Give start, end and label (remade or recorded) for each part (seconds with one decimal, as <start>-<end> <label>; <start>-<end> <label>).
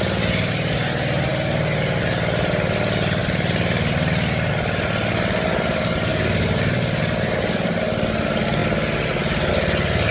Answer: 0.0-3.2 recorded; 3.2-4.5 remade; 4.5-6.1 recorded; 6.1-7.0 remade; 7.0-8.6 recorded; 8.6-9.5 remade; 9.5-10.1 recorded